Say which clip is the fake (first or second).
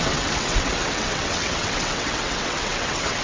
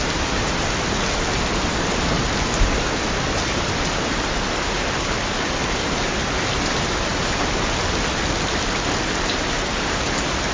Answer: first